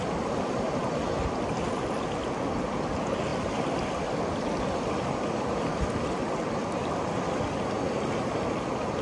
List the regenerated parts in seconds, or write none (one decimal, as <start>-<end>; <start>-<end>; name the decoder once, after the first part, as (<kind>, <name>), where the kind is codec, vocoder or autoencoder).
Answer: none